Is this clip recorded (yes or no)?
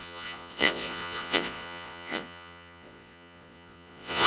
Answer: no